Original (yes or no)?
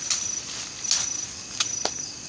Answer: yes